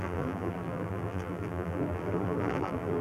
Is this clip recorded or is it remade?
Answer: remade